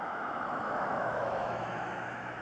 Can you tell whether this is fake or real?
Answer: fake